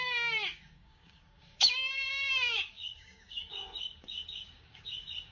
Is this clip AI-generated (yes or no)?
yes